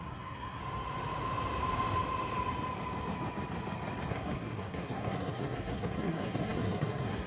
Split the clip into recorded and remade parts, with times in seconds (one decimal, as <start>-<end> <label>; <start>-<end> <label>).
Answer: 0.0-0.6 remade; 0.6-4.1 recorded; 4.1-7.3 remade